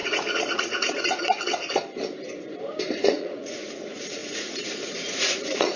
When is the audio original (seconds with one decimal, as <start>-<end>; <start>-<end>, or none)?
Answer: 1.6-3.0